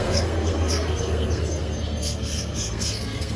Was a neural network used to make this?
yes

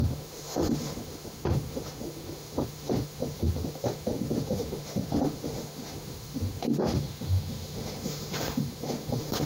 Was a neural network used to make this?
yes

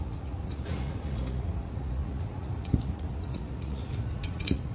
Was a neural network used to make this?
yes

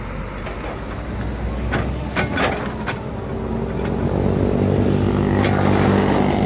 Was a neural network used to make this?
no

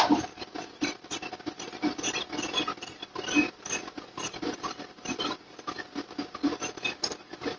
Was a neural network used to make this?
no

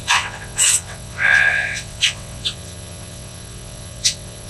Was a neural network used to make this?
yes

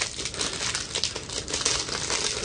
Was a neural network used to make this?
no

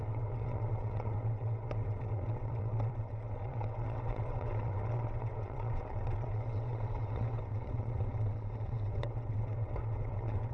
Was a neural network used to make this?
yes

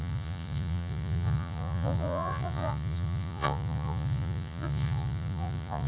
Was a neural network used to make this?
yes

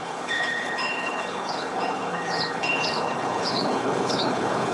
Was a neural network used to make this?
yes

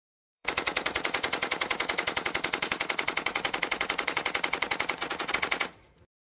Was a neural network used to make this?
yes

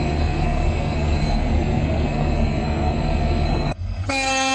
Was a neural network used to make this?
yes